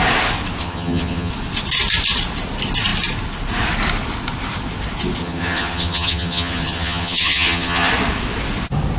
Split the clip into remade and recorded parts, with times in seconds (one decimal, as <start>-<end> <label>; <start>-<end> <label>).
0.0-0.6 recorded; 0.6-1.3 remade; 1.3-5.2 recorded; 5.2-7.9 remade; 7.9-9.0 recorded